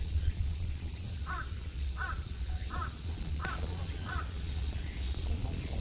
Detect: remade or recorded remade